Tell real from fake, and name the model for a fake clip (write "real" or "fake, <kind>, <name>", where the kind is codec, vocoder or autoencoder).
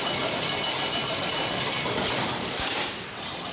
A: fake, vocoder, BigVGAN v2